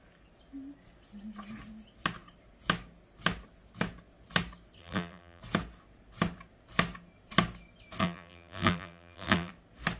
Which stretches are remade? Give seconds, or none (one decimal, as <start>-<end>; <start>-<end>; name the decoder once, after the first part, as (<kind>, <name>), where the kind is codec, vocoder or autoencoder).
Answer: 4.8-5.4 (vocoder, BigVGAN v2); 8.0-9.5